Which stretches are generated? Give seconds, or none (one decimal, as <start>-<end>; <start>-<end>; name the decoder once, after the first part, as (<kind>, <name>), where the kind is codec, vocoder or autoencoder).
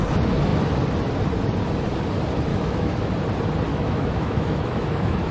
2.5-3.1 (autoencoder, DAC-VAE); 3.7-5.3